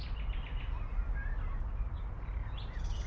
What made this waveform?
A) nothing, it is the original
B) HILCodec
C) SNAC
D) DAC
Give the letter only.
A